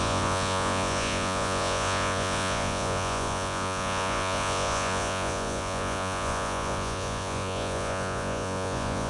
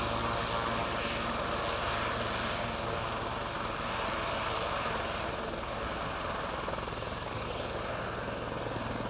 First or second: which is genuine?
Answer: second